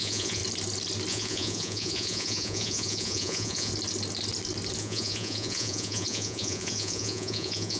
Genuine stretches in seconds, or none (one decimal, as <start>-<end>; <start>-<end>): 0.4-1.1; 3.7-4.8